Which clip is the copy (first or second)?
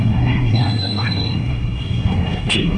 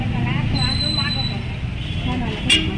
first